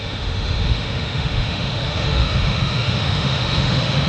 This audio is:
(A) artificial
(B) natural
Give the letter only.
A